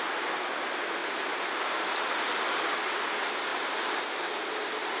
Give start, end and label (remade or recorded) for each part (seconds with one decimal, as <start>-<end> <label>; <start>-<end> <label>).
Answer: 0.0-1.0 recorded; 1.0-2.4 remade; 2.4-3.5 recorded; 3.5-4.4 remade; 4.4-5.0 recorded